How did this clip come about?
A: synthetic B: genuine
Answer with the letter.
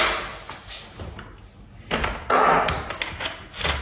B